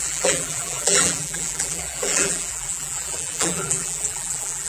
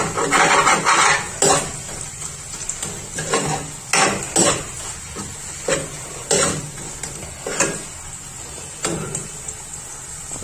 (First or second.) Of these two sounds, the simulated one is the first